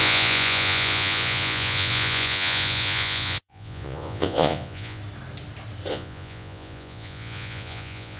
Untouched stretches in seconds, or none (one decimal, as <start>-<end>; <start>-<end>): 5.0-5.9